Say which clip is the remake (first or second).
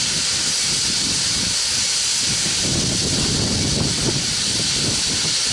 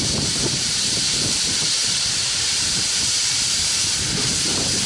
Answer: second